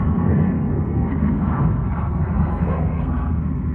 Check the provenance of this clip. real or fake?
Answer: fake